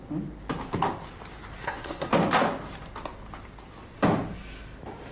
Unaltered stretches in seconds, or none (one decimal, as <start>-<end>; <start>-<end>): 0.0-1.6; 2.1-5.1